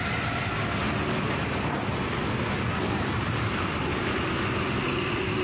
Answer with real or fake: real